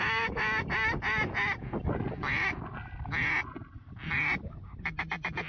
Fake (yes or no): no